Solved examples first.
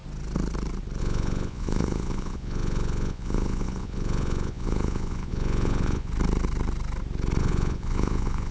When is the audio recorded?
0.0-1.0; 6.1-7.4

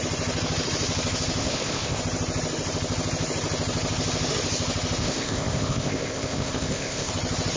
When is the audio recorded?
0.0-1.4; 2.0-5.0; 7.1-7.6

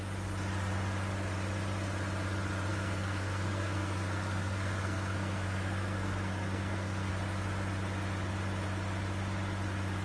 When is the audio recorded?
0.0-2.7; 7.1-10.0

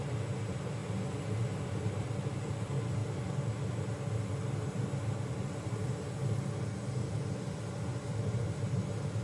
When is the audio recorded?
0.8-1.4; 3.0-5.2; 6.2-7.0

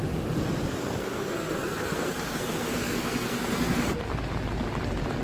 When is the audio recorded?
0.0-0.8; 3.9-5.2

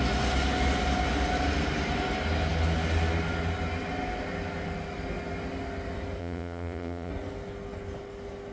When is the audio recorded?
0.0-6.2; 7.1-8.5